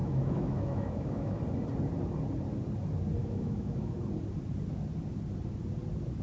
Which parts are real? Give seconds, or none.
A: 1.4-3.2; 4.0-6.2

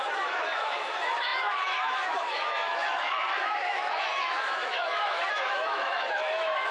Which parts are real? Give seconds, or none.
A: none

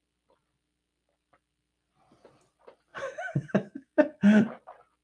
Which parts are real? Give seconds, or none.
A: 0.0-2.9; 4.4-5.0

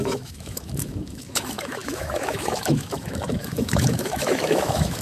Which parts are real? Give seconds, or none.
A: none

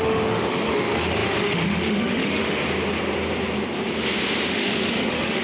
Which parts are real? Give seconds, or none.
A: 2.6-4.5

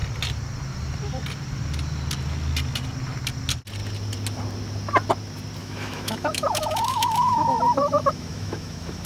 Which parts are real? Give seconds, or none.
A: 0.0-5.6

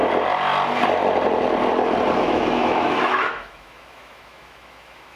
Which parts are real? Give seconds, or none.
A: 0.0-2.2